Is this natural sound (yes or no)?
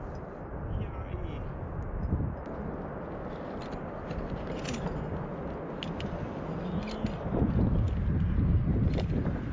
yes